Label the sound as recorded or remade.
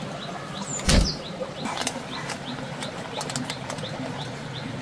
recorded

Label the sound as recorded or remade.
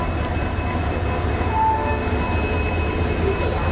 recorded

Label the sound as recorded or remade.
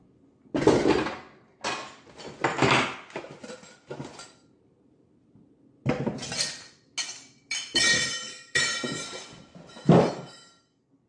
recorded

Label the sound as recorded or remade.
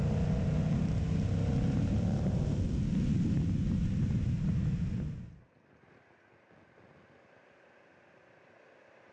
recorded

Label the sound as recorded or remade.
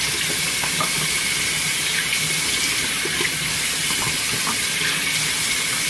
recorded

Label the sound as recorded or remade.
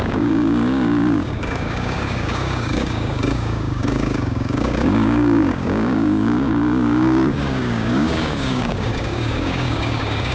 remade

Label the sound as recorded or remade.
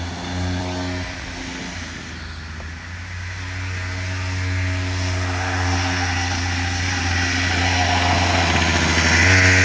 recorded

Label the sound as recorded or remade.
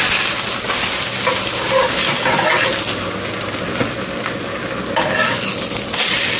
recorded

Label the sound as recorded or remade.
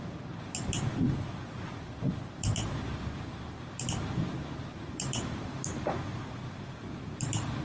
remade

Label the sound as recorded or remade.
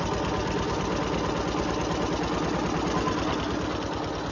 recorded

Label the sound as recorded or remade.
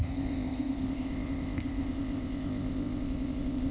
remade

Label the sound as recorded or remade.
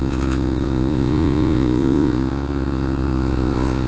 remade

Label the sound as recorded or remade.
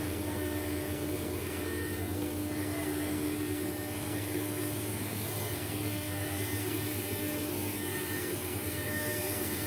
remade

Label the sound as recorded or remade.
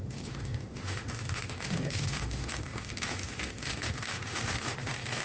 remade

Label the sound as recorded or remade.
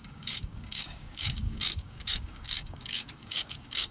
remade